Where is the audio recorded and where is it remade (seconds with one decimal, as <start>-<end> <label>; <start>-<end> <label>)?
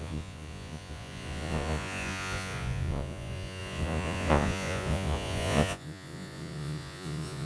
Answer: 0.0-7.5 remade